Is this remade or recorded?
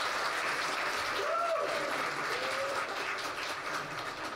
remade